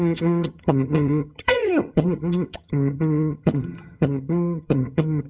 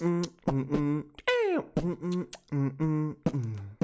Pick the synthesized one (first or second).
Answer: first